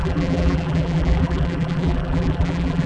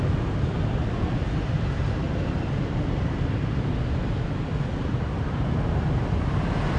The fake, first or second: first